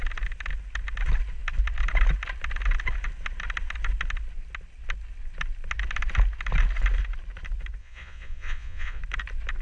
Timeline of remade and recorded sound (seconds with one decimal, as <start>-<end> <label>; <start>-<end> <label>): 0.0-7.8 recorded; 7.8-9.0 remade; 9.0-9.6 recorded